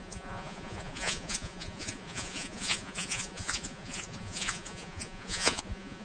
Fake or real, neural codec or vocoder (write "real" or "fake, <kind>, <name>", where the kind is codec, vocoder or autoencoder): fake, vocoder, Vocos